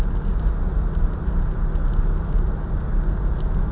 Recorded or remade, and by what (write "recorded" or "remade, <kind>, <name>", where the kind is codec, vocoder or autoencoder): recorded